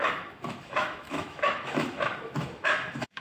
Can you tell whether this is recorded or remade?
remade